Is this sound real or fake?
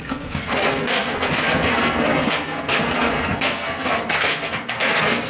fake